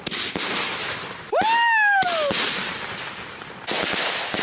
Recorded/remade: recorded